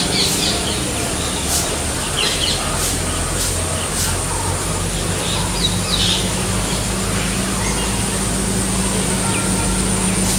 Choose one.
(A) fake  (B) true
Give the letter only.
B